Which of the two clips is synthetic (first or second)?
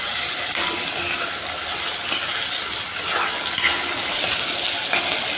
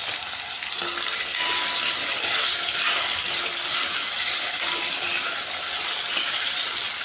second